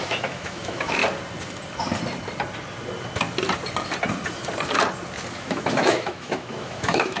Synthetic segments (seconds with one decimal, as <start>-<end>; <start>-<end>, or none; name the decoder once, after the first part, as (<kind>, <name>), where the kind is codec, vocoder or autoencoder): 0.0-1.0 (autoencoder, DAC-VAE); 5.3-7.2